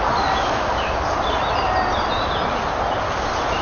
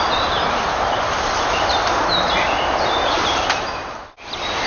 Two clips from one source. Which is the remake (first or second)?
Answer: second